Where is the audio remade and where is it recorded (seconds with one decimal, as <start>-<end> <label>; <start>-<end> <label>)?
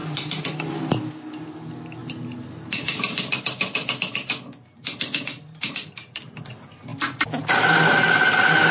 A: 0.0-1.1 remade; 1.1-2.0 recorded; 2.0-6.5 remade; 6.5-8.7 recorded